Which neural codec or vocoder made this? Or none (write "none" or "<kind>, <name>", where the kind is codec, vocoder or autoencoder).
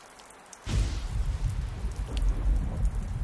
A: none